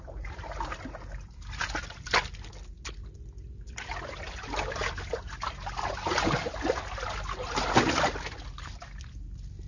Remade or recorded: recorded